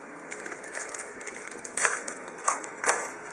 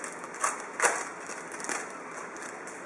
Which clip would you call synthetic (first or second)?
first